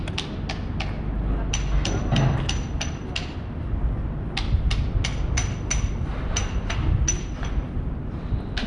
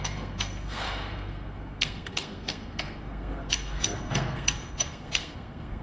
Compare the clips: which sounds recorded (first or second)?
first